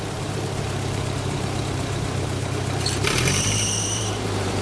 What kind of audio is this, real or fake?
fake